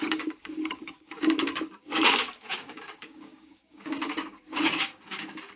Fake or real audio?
fake